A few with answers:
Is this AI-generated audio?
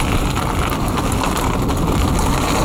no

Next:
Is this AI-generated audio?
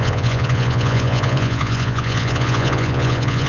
yes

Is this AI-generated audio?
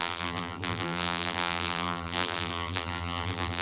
yes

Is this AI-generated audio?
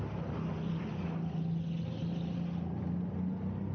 no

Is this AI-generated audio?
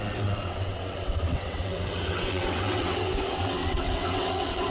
yes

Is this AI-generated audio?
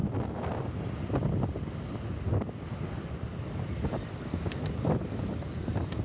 no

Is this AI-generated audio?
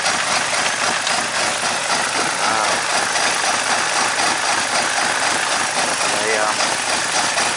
no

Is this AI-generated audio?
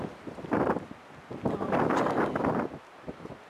no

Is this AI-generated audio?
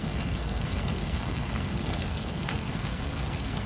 yes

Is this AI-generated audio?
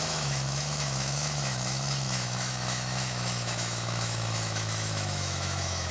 yes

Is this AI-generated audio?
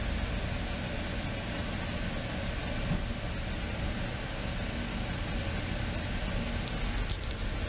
no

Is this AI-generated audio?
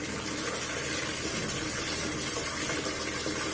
no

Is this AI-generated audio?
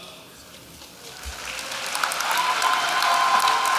no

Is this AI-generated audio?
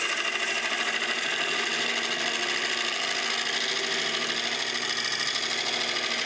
no